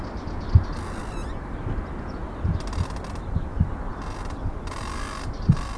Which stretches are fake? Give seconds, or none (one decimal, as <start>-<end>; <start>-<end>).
none